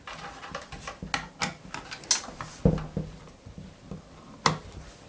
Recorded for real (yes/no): yes